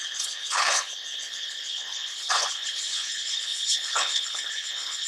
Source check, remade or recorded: remade